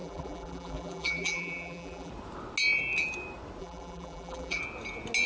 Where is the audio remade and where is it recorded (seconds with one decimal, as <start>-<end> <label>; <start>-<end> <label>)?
0.0-2.1 remade; 2.1-3.6 recorded; 3.6-4.6 remade; 4.6-5.3 recorded